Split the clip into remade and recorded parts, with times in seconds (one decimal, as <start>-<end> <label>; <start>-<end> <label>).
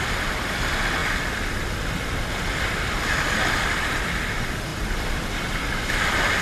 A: 0.0-6.4 recorded